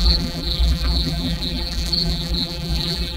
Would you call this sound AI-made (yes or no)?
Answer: yes